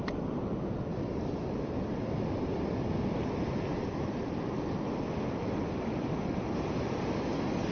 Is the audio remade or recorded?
recorded